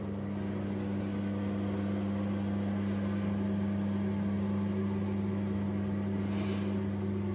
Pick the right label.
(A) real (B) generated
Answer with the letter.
A